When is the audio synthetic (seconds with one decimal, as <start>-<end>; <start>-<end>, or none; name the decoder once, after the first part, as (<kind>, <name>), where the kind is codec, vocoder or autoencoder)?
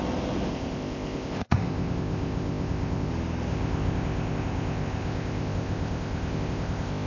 0.5-3.1 (codec, ZipCodec); 3.5-7.1